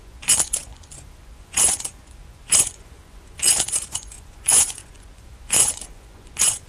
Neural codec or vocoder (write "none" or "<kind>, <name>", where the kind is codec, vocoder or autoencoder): vocoder, Vocos